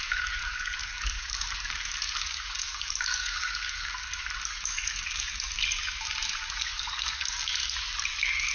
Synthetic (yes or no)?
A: yes